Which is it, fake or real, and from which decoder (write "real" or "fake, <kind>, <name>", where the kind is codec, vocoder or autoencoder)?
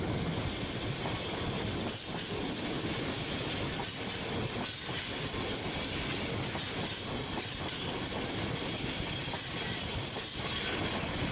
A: real